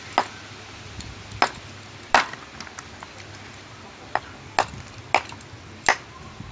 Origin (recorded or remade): recorded